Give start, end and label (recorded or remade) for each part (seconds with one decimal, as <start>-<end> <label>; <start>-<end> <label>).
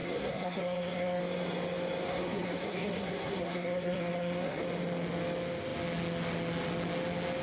0.0-1.2 remade; 1.2-2.1 recorded; 2.1-4.6 remade; 4.6-7.4 recorded